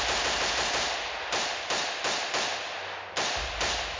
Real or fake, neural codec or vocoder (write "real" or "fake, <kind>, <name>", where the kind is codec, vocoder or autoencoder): real